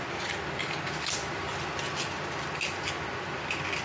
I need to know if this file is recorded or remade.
recorded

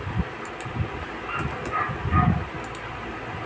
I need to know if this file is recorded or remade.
recorded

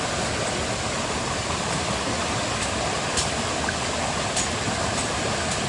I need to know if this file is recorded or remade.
recorded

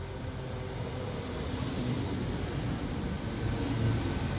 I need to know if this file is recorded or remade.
recorded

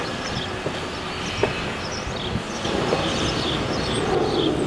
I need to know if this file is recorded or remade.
recorded